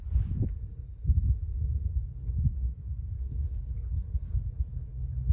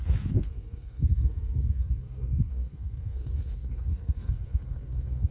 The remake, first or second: second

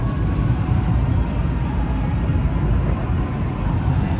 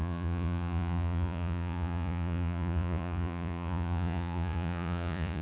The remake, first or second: second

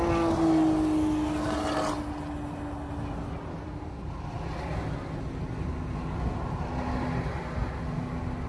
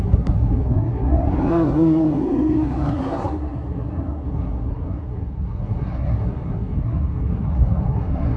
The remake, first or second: second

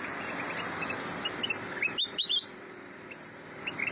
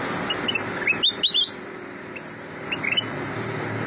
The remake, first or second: first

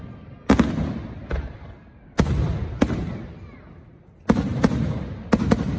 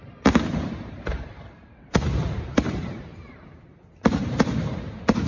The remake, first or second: second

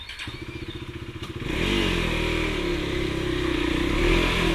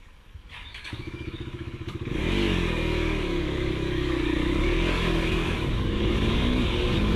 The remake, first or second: second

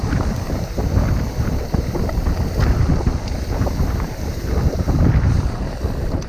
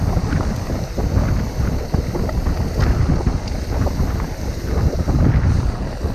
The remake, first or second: first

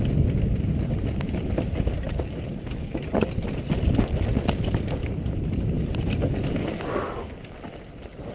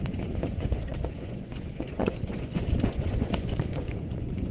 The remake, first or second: second